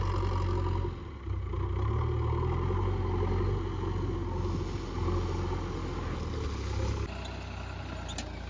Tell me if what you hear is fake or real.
real